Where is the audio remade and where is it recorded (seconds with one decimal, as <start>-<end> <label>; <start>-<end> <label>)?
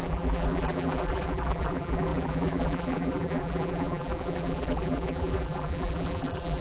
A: 0.0-6.6 remade